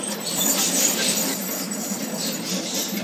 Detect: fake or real real